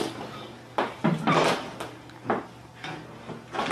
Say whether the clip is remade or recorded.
recorded